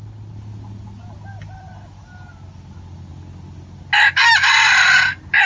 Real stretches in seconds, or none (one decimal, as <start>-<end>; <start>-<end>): 0.0-5.5